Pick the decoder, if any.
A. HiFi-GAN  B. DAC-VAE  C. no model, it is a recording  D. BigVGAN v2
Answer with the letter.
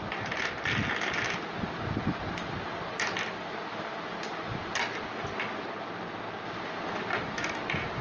C